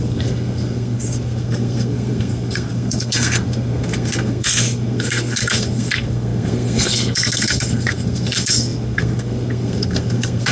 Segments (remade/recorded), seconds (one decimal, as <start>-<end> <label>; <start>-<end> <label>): 0.0-10.5 remade